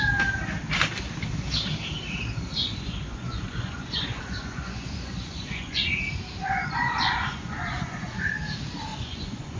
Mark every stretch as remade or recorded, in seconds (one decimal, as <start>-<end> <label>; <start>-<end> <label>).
0.0-2.6 recorded; 2.6-6.0 remade; 6.0-6.4 recorded; 6.4-8.3 remade; 8.3-8.9 recorded; 8.9-9.6 remade